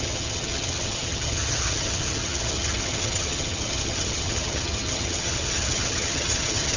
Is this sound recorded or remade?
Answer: remade